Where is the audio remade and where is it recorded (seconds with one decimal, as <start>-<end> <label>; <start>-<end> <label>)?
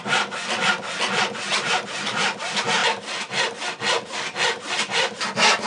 0.0-1.5 recorded; 1.5-2.4 remade; 2.4-5.7 recorded